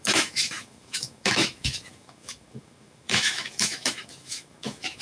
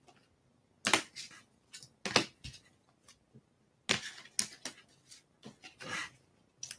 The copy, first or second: first